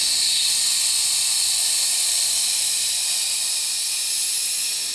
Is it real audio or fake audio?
real